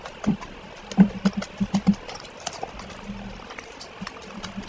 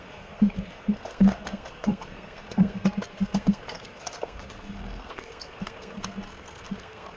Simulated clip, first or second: second